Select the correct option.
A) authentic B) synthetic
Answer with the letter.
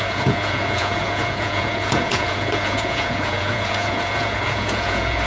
B